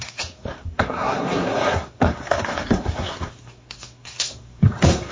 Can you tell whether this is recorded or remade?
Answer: remade